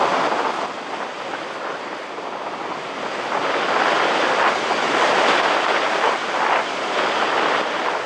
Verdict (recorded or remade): recorded